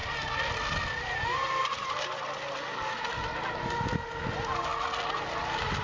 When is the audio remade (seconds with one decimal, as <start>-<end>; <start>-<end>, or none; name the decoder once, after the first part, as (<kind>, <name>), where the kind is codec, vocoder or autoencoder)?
none